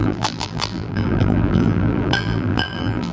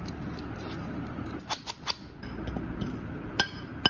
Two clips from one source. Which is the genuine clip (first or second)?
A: second